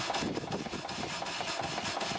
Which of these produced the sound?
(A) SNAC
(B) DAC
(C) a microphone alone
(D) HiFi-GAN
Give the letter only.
C